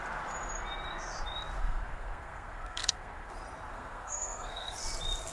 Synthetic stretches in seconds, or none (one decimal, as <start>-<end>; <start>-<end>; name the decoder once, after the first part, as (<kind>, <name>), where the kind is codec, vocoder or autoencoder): 1.6-3.3 (codec, SNAC); 3.7-4.8